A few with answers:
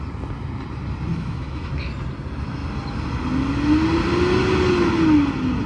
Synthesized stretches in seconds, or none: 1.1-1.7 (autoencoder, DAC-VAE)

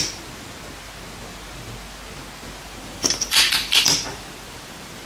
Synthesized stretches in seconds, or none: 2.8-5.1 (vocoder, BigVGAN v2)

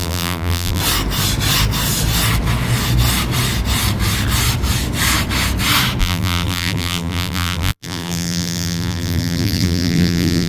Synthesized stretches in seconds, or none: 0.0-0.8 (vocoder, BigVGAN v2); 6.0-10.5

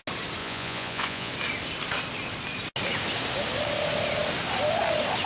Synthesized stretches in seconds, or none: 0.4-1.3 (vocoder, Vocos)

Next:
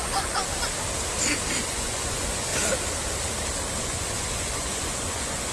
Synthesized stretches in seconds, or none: 0.0-0.4 (vocoder, Vocos); 1.7-2.5; 3.8-5.5

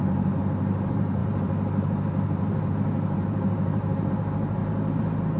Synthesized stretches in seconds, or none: 0.0-4.6 (vocoder, BigVGAN v2)

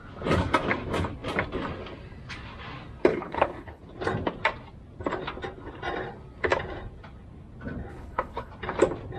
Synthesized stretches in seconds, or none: 3.1-3.8 (codec, HILCodec); 7.9-8.5